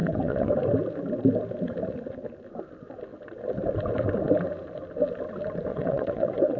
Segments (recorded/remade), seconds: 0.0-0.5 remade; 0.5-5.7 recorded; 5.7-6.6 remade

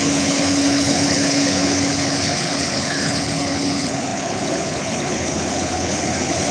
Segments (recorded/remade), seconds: 0.0-6.5 remade

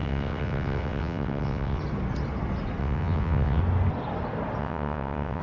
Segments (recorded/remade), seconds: 0.0-1.8 remade; 1.8-2.8 recorded; 2.8-3.6 remade; 3.6-4.6 recorded; 4.6-5.4 remade

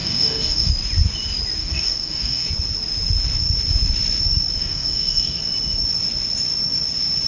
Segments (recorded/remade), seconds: 0.0-0.7 remade; 0.7-1.6 recorded; 1.6-2.5 remade; 2.5-4.6 recorded; 4.6-5.4 remade; 5.4-7.3 recorded